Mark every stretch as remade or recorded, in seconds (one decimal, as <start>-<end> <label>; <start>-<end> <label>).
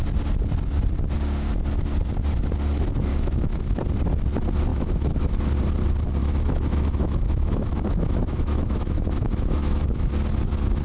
0.0-3.1 recorded; 3.1-3.8 remade; 3.8-4.7 recorded; 4.7-5.4 remade; 5.4-6.2 recorded; 6.2-10.1 remade; 10.1-10.8 recorded